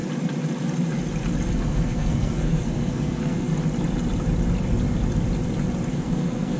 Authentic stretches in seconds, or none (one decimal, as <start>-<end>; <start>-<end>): 0.0-1.5; 3.5-5.9